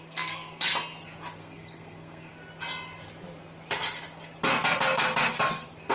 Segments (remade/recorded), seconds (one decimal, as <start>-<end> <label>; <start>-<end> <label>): 0.0-0.7 remade; 0.7-1.4 recorded; 1.4-2.3 remade; 2.3-5.9 recorded